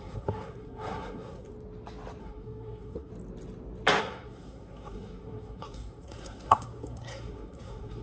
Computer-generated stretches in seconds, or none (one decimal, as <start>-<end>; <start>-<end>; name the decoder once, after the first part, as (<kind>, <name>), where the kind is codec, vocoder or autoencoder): 0.0-1.5 (codec, SNAC); 2.2-3.1; 4.0-8.0

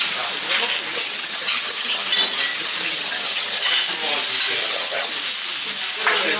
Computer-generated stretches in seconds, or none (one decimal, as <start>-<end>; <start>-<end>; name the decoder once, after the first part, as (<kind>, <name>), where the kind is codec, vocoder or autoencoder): 0.9-2.0 (vocoder, HiFi-GAN); 2.5-3.7; 4.6-5.1